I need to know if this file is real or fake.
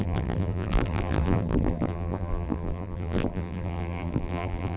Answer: fake